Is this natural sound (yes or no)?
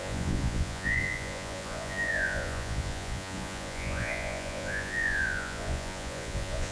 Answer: no